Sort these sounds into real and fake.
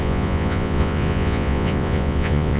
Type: fake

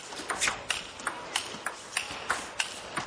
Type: fake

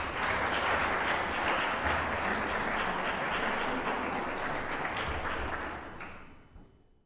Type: real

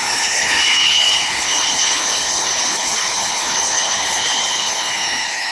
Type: fake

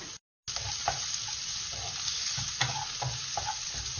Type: real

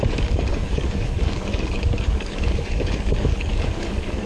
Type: fake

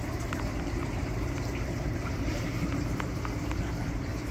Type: fake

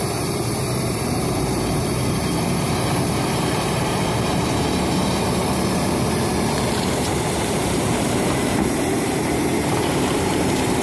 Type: fake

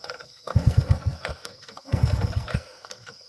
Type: fake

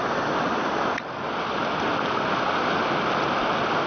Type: real